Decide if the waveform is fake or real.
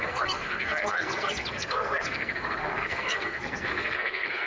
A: fake